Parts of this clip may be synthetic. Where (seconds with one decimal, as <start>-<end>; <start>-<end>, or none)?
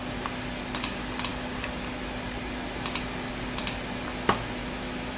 4.6-5.2